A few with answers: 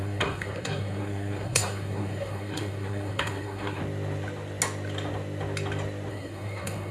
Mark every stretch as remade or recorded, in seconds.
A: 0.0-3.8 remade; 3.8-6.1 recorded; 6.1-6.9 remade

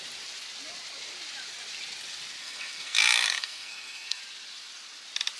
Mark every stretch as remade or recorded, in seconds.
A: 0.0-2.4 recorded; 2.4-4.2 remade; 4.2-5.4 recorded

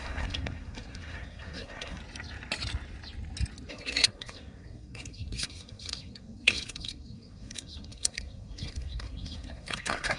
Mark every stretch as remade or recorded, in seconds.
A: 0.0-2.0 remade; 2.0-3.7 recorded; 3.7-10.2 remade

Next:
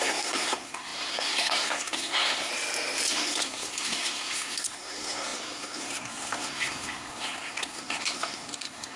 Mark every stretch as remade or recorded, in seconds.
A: 0.0-2.5 remade; 2.5-3.1 recorded; 3.1-9.0 remade

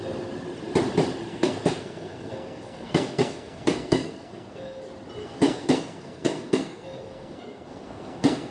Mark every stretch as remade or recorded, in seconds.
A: 0.0-1.3 recorded; 1.3-4.8 remade; 4.8-5.2 recorded; 5.2-8.5 remade

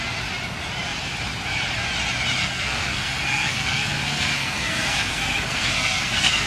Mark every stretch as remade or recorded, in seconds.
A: 0.0-2.4 recorded; 2.4-6.5 remade

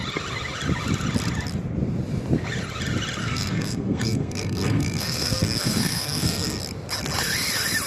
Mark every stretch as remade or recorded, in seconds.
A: 0.0-3.2 recorded; 3.2-6.6 remade; 6.6-7.9 recorded